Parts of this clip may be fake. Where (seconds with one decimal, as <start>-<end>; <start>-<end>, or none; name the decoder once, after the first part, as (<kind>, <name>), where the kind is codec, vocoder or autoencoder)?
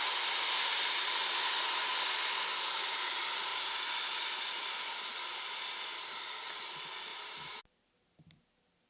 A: 7.1-7.6 (vocoder, BigVGAN v2)